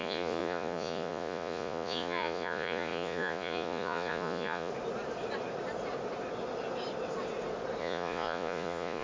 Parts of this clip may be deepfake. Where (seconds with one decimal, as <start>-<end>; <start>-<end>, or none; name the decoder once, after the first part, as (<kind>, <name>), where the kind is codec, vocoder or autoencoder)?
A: 0.0-4.7 (vocoder, Vocos); 7.8-9.0